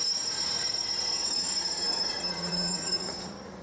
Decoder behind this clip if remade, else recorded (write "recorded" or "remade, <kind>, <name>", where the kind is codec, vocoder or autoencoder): remade, vocoder, Vocos